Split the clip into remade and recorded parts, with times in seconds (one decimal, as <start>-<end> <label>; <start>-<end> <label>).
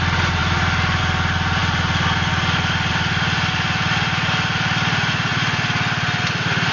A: 0.0-6.7 recorded